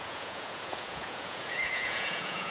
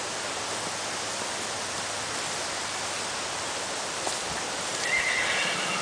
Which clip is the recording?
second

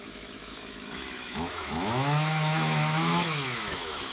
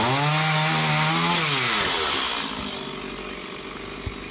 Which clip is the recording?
second